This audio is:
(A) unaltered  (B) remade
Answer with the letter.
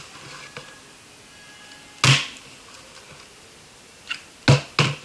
A